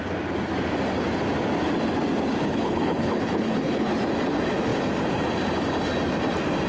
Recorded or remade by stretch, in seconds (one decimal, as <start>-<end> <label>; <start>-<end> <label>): 0.0-2.4 recorded; 2.4-3.9 remade; 3.9-6.7 recorded